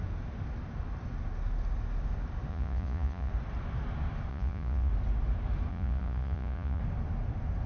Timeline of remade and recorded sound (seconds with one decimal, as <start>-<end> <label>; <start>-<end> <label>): 0.0-2.5 recorded; 2.5-3.3 remade; 3.3-4.3 recorded; 4.3-4.9 remade; 4.9-5.7 recorded; 5.7-6.8 remade; 6.8-7.7 recorded